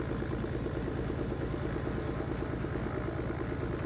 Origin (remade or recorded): recorded